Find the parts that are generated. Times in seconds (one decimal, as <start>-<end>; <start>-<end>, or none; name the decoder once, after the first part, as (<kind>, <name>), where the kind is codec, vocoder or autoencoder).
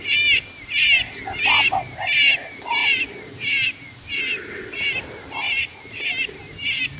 none